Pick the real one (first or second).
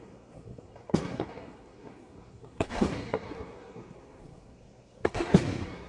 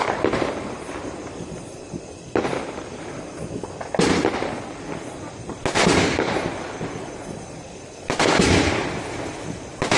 second